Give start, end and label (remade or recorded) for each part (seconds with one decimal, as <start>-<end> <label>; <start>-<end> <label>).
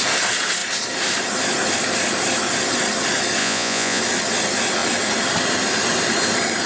0.0-3.4 recorded; 3.4-4.0 remade; 4.0-6.7 recorded